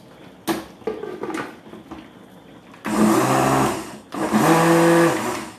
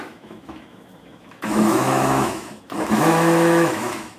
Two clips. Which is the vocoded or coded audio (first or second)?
second